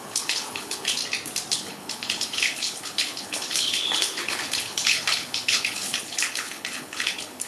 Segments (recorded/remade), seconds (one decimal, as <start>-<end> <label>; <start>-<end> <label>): 0.0-1.0 remade; 1.0-1.5 recorded; 1.5-7.5 remade

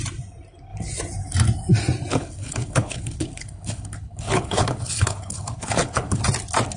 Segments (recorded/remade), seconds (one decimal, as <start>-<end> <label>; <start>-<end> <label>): 0.0-2.1 recorded; 2.1-6.2 remade; 6.2-6.8 recorded

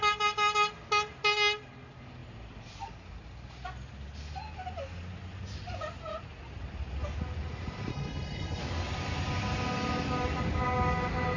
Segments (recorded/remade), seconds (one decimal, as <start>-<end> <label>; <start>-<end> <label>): 0.0-7.9 recorded; 7.9-8.6 remade; 8.6-11.4 recorded

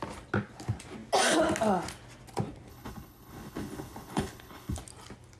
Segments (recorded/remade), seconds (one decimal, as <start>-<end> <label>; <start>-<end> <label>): 0.0-2.7 recorded; 2.7-4.8 remade; 4.8-5.4 recorded

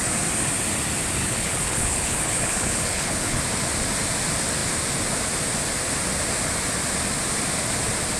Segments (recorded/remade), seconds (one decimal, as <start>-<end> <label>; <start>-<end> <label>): 0.0-1.2 recorded; 1.2-3.4 remade; 3.4-8.2 recorded